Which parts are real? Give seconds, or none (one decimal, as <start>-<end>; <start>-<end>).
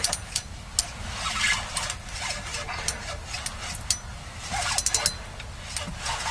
0.0-6.3